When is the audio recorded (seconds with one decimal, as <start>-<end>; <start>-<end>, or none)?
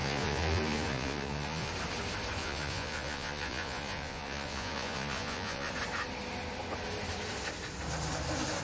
1.7-2.4; 5.7-8.6